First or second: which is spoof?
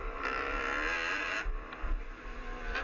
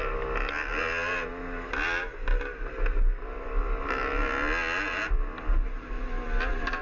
first